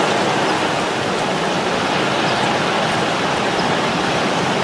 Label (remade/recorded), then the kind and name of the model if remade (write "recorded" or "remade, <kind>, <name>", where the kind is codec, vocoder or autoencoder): recorded